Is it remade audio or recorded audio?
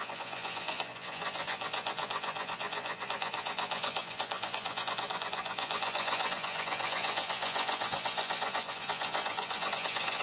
remade